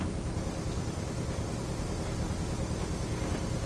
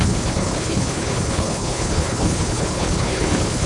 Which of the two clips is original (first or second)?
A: first